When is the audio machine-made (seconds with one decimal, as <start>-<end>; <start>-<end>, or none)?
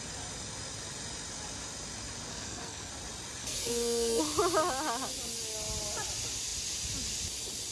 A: 2.3-2.9; 3.4-4.2